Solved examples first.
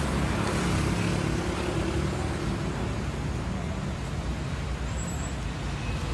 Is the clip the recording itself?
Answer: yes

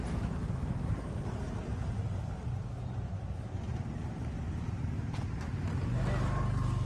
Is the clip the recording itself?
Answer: yes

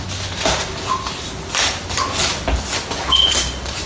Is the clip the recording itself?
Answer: yes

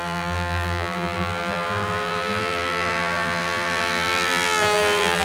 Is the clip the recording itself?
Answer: no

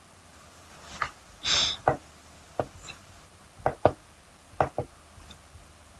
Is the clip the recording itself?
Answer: yes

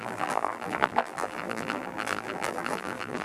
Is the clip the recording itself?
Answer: no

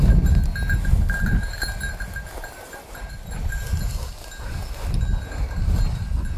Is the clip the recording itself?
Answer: yes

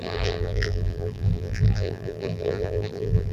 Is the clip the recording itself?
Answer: no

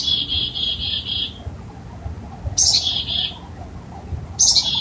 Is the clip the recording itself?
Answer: yes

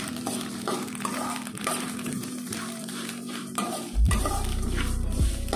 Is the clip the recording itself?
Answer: no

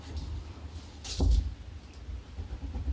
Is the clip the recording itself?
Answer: yes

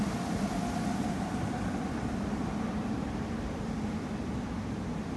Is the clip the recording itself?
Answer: no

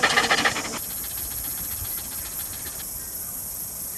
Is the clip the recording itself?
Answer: yes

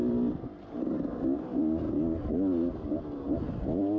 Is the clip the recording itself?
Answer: yes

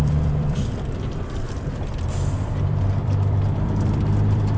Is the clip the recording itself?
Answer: no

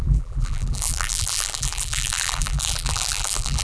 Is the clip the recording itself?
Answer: no